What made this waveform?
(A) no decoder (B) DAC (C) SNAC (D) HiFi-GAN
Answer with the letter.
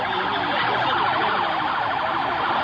A